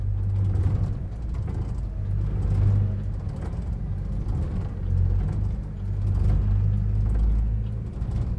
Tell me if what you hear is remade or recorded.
recorded